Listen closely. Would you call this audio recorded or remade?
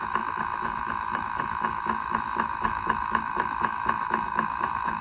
remade